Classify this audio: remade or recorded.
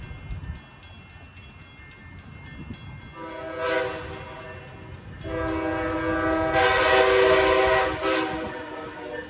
recorded